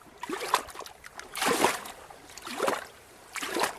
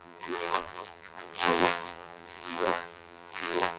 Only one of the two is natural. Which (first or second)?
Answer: first